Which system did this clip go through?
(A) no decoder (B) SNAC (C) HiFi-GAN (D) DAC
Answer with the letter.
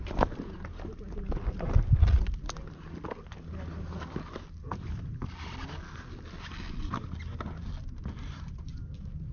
A